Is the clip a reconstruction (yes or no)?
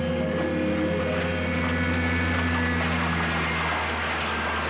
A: no